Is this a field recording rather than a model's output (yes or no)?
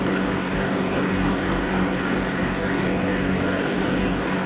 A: no